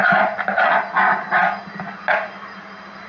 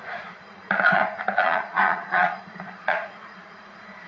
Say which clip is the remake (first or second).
second